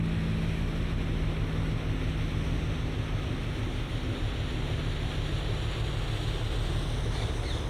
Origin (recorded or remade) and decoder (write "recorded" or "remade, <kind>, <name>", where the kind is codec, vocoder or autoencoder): recorded